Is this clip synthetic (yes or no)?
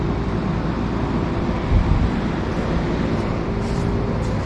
no